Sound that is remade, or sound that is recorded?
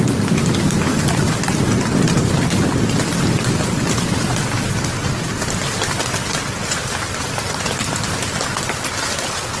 recorded